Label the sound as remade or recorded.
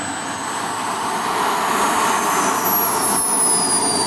recorded